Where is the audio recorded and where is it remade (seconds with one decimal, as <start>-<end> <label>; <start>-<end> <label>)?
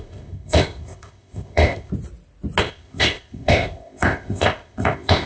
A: 0.0-1.9 remade; 1.9-2.6 recorded; 2.6-5.3 remade